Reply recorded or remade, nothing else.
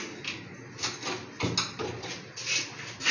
recorded